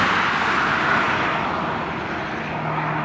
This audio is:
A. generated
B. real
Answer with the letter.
B